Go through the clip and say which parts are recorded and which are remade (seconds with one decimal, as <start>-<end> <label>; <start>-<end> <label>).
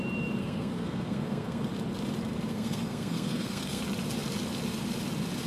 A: 0.0-0.4 recorded; 0.4-1.7 remade; 1.7-2.5 recorded; 2.5-3.8 remade; 3.8-5.5 recorded